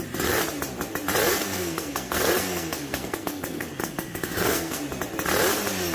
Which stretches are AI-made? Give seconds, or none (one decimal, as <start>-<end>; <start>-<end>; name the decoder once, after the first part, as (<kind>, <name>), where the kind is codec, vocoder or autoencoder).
1.3-4.8 (codec, SNAC)